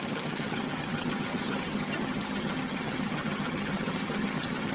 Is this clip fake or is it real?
fake